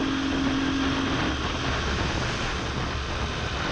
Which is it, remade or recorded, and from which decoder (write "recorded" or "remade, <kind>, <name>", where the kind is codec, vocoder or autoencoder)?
recorded